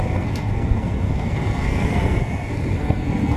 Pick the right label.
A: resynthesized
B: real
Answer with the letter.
A